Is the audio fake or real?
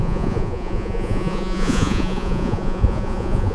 fake